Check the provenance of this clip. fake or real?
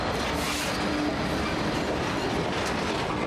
real